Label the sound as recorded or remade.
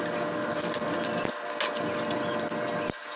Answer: recorded